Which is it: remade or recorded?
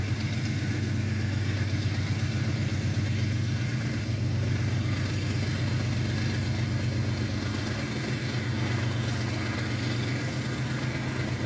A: recorded